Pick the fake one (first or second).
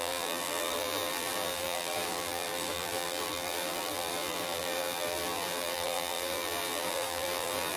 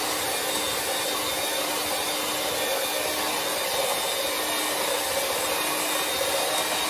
first